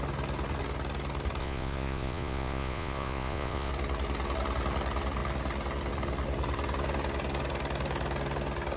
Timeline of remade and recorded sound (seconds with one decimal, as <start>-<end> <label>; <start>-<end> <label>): 0.0-1.4 recorded; 1.4-3.7 remade; 3.7-8.8 recorded